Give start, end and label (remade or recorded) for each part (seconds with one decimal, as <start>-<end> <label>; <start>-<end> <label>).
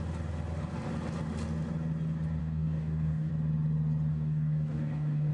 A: 0.0-2.4 recorded; 2.4-3.3 remade; 3.3-4.1 recorded; 4.1-5.3 remade